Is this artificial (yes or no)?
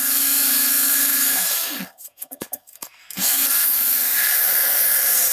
yes